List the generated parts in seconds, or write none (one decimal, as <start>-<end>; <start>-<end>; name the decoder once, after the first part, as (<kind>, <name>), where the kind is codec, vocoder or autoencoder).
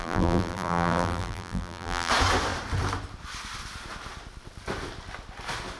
0.0-2.1 (vocoder, BigVGAN v2)